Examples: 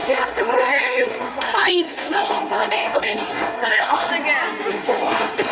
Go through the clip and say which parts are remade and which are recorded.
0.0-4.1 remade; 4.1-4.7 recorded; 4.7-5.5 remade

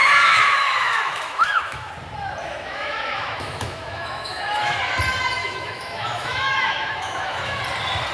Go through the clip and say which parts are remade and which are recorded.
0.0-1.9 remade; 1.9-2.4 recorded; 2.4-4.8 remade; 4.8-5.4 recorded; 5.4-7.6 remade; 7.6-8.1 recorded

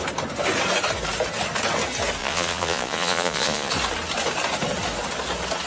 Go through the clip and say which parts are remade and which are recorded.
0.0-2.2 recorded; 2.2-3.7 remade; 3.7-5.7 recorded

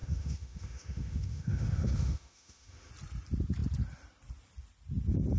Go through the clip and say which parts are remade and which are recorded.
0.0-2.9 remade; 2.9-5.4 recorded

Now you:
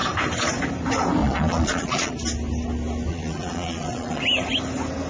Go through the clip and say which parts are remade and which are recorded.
0.0-1.2 recorded; 1.2-2.1 remade; 2.1-3.1 recorded; 3.1-4.2 remade; 4.2-5.1 recorded